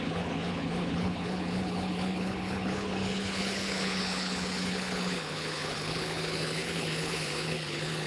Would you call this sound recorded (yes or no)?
no